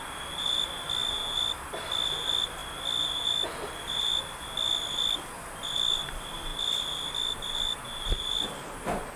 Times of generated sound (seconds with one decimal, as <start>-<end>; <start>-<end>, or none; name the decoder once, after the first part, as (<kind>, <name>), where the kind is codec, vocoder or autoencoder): none